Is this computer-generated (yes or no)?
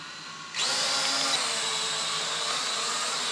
no